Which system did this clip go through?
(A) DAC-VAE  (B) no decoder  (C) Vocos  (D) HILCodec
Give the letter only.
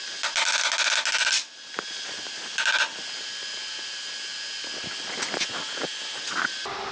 B